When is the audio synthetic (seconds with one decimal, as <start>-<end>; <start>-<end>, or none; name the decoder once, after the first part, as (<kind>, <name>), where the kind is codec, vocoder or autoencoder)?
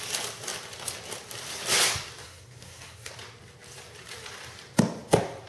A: 2.2-3.1 (codec, SNAC)